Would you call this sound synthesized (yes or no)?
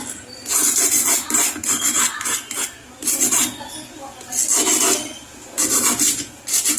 no